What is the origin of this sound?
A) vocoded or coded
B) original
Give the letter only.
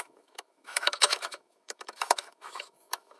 A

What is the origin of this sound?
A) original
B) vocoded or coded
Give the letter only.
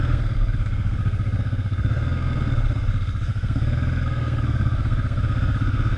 B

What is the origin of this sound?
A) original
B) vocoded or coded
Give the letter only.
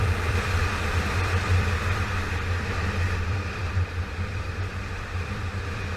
B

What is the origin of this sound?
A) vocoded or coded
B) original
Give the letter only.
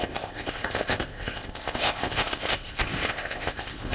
A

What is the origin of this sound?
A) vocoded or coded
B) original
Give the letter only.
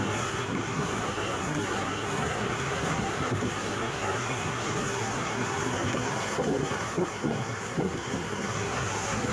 A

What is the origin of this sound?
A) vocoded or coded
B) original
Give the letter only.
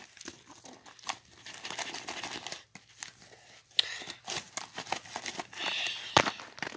B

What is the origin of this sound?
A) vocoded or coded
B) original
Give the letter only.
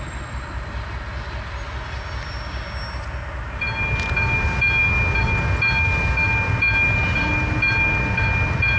B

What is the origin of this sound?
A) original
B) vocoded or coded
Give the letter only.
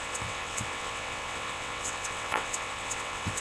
B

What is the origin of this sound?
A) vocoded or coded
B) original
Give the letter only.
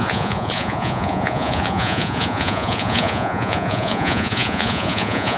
A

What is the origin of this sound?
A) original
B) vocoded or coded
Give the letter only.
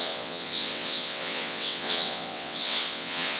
B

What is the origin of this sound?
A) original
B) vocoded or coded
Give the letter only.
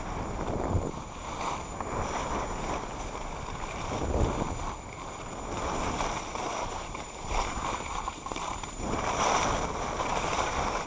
B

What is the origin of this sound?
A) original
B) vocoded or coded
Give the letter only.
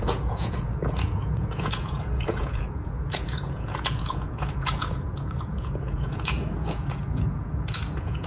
B